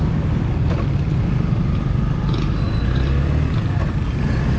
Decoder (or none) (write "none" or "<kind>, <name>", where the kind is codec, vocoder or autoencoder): none